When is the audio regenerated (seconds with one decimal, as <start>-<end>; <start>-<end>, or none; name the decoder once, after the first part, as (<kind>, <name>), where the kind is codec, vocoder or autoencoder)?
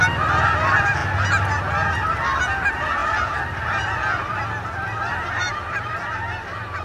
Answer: 3.0-6.0 (vocoder, BigVGAN v2)